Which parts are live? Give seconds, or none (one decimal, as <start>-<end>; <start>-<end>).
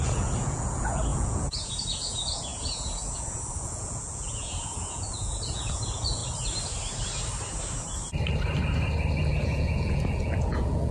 6.2-9.2